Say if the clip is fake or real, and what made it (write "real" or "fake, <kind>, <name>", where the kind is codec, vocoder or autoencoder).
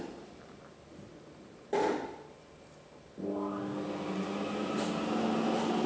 real